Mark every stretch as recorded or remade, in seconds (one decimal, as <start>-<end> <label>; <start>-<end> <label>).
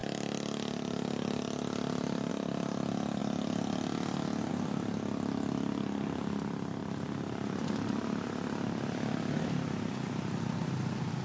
0.0-6.8 recorded; 6.8-8.3 remade; 8.3-11.2 recorded